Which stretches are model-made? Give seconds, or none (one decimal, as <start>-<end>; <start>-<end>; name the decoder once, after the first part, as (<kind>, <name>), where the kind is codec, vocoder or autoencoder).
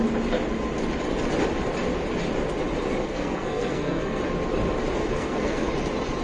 3.0-4.2 (codec, SNAC); 5.0-5.7